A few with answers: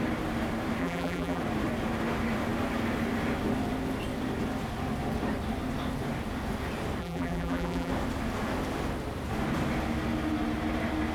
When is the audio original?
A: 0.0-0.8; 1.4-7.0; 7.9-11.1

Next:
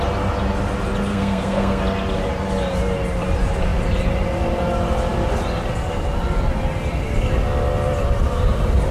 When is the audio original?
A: 0.0-1.1; 1.8-8.9